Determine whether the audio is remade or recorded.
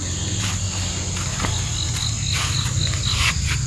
recorded